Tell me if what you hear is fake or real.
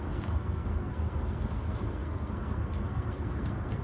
fake